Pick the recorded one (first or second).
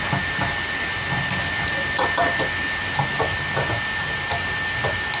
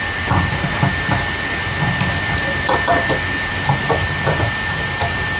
first